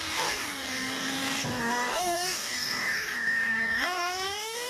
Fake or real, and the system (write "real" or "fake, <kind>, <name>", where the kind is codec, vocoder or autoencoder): fake, codec, DAC